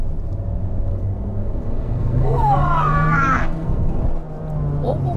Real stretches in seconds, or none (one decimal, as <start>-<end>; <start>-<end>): 0.0-0.9; 4.0-5.2